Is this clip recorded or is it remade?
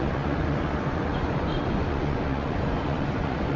remade